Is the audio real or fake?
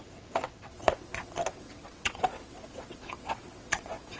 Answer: fake